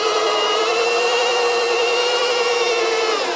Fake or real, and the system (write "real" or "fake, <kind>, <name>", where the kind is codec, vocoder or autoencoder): real